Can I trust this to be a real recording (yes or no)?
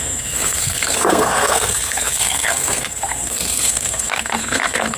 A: no